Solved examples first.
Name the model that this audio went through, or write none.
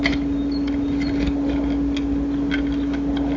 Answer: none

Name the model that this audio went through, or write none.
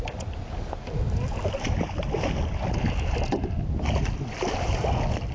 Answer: none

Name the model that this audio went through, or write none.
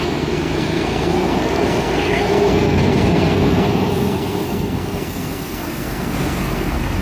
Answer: codec, SNAC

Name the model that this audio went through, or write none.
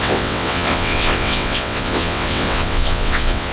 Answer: vocoder, WaveNeXt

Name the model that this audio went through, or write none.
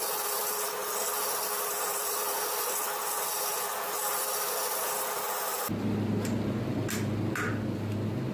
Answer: none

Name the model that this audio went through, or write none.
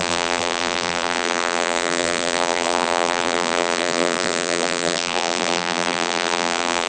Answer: vocoder, BigVGAN v2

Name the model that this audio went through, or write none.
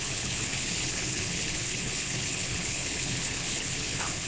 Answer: codec, HILCodec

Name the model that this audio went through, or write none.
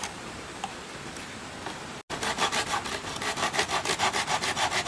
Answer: none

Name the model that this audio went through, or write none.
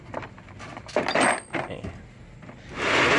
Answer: none